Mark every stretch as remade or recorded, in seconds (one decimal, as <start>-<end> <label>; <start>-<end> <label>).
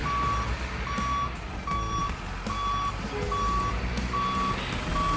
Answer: 0.0-5.2 recorded